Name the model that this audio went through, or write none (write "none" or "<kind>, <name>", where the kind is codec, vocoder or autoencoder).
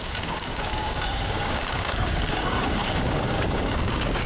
codec, DAC